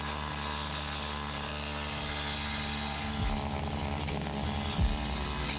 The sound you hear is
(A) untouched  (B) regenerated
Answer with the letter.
A